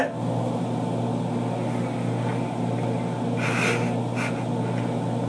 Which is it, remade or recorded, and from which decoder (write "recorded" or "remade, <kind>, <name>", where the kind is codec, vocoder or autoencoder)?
recorded